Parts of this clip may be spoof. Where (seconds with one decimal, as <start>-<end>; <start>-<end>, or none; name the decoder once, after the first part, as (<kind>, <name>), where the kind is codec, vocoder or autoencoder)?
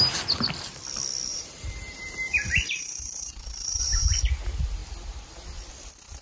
1.3-4.2 (vocoder, BigVGAN v2)